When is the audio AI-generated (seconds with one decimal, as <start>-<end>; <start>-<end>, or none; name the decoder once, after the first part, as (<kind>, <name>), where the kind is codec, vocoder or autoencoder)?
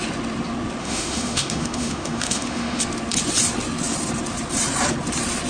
0.8-2.8 (autoencoder, DAC-VAE)